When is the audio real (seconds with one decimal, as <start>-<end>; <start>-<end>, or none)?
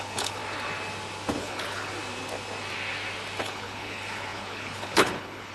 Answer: 0.4-1.4; 1.9-3.4